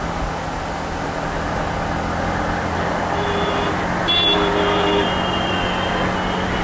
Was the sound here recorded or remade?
recorded